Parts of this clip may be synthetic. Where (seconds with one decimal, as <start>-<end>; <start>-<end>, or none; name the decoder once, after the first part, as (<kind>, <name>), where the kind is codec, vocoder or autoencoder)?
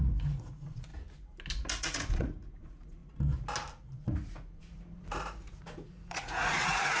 0.0-0.9 (vocoder, Vocos); 1.7-3.0; 4.1-7.0